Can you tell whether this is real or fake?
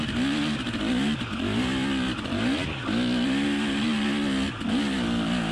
real